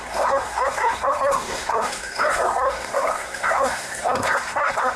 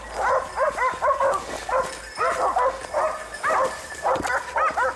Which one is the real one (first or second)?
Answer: second